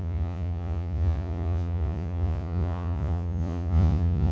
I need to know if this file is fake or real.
fake